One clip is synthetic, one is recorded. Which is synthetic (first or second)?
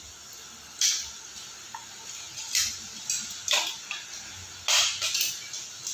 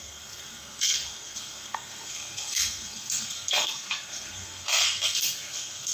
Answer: second